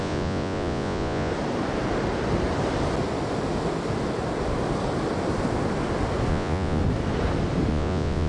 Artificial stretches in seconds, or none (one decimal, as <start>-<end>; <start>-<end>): 0.0-1.3; 6.3-6.8; 7.7-8.3